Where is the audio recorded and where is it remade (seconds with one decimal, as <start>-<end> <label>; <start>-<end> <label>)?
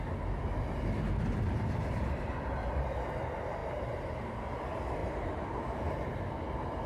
0.0-3.6 recorded; 3.6-4.2 remade; 4.2-5.0 recorded; 5.0-5.6 remade; 5.6-6.9 recorded